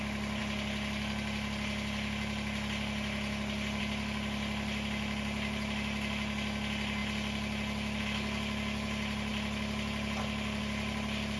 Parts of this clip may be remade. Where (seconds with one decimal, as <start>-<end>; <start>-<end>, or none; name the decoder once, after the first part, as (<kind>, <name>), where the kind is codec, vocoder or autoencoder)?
none